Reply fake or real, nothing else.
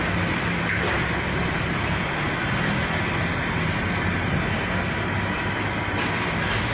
real